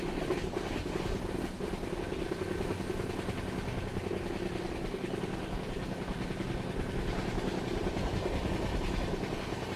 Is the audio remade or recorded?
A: recorded